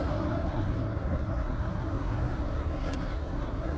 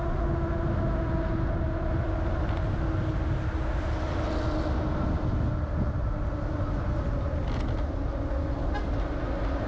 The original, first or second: second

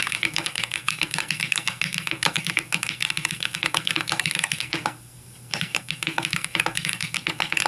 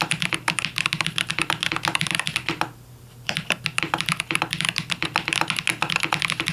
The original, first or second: second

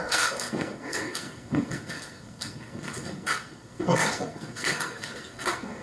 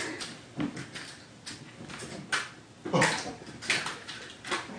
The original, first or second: second